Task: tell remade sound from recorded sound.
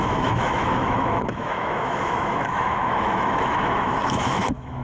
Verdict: remade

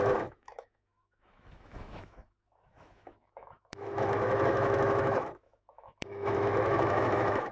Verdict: remade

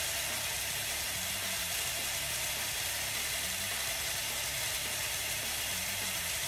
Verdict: recorded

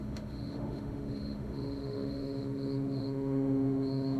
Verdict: remade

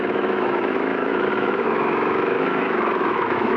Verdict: remade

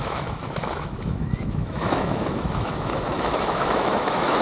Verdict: remade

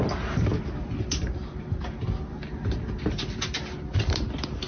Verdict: recorded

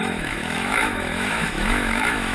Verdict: remade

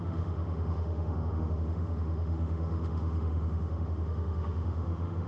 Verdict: remade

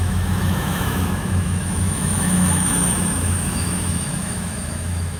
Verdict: remade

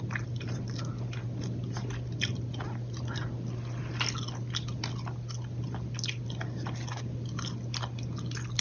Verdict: recorded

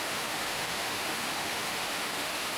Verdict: remade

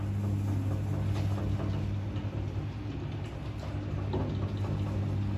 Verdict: recorded